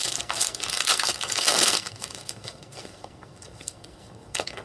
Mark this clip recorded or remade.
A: remade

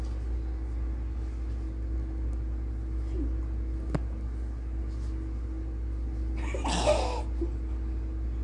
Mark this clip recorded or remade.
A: recorded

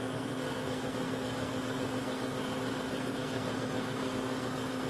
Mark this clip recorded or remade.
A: remade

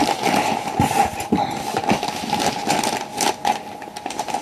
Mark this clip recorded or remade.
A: recorded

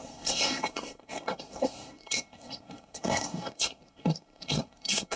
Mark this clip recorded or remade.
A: remade